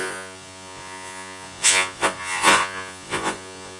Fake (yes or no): yes